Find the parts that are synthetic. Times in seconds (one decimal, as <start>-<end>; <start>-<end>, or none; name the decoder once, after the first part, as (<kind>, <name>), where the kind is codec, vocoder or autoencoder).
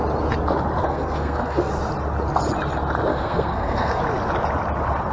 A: 0.8-1.7 (codec, SNAC); 3.1-4.0